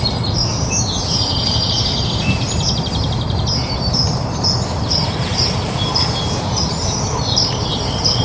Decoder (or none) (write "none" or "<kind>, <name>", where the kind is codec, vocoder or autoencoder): none